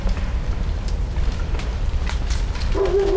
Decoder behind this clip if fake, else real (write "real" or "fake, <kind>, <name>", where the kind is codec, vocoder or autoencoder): real